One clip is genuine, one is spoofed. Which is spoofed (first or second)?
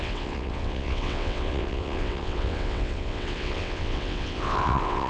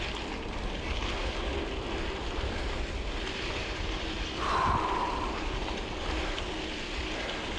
first